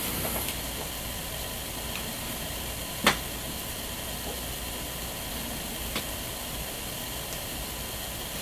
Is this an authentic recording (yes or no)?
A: yes